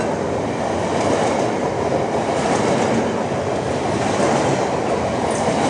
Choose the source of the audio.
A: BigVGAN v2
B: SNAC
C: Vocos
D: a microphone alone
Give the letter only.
D